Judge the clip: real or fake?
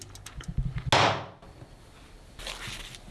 real